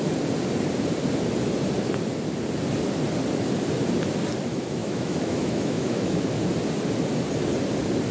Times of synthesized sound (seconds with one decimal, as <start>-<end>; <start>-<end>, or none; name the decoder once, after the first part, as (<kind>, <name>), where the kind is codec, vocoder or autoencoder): 4.8-6.2 (autoencoder, DAC-VAE)